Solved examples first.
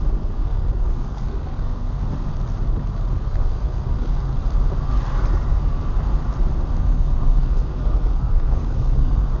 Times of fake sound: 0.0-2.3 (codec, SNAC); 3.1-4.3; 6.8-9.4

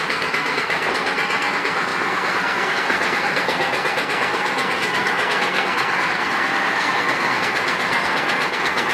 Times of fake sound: 0.0-8.9 (codec, SNAC)

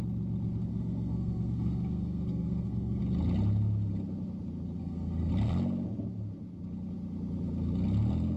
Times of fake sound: 0.7-3.0 (codec, SNAC); 4.8-5.3

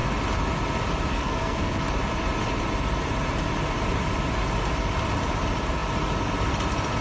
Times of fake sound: 1.1-1.8 (codec, SNAC)

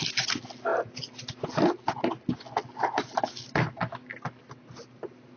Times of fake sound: none